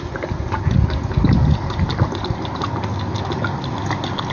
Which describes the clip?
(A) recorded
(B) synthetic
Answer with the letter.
A